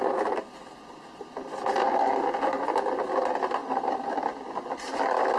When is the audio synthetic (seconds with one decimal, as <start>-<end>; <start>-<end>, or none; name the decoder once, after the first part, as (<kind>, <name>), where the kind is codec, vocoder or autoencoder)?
none